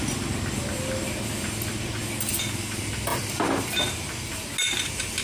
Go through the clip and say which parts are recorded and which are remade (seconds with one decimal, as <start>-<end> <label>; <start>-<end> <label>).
0.0-3.1 recorded; 3.1-3.6 remade; 3.6-5.2 recorded